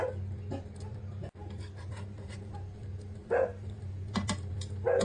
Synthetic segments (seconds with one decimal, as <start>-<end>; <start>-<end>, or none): 0.9-2.5; 3.2-3.8